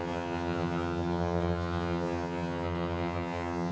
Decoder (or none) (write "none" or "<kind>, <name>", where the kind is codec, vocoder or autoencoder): vocoder, HiFi-GAN